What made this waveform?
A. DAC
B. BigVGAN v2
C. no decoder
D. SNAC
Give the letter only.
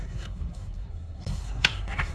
D